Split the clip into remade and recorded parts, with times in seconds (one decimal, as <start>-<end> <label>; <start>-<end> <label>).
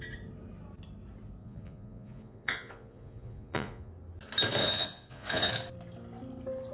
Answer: 0.0-1.4 recorded; 1.4-3.9 remade; 3.9-4.6 recorded; 4.6-5.5 remade; 5.5-6.7 recorded